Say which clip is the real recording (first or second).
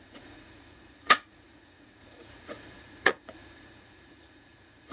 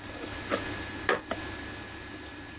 second